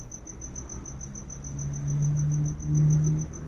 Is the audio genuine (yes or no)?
yes